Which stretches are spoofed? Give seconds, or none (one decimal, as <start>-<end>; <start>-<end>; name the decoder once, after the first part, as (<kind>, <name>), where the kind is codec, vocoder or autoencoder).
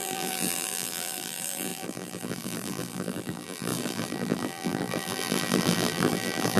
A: 0.0-6.6 (vocoder, BigVGAN v2)